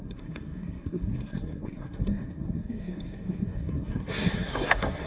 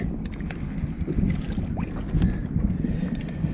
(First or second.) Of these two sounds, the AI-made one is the first